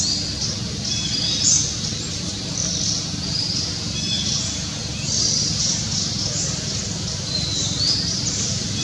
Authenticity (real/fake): real